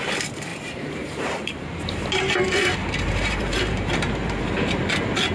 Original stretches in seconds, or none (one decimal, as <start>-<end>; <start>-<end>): 0.0-0.5; 2.2-2.8; 4.4-5.3

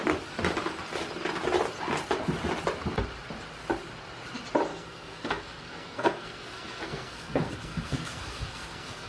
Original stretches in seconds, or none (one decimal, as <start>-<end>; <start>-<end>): 0.0-4.7

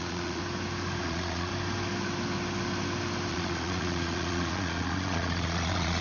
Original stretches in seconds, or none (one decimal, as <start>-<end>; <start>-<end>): 0.4-1.0; 1.5-3.3

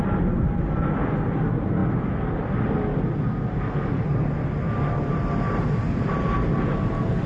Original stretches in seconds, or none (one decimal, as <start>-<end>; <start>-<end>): 0.0-7.3

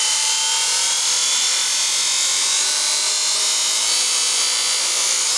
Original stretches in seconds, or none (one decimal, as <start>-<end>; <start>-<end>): 1.6-4.1

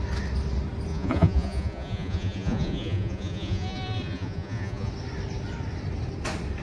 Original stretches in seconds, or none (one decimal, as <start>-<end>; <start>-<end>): 0.0-0.9; 4.9-6.6